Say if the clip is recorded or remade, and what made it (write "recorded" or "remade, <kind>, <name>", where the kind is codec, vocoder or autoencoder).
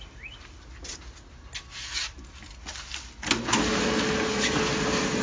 recorded